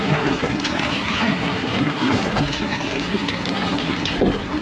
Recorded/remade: remade